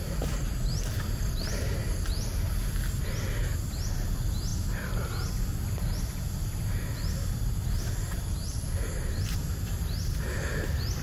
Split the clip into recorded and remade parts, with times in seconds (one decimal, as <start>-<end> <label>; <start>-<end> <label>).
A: 0.0-11.0 recorded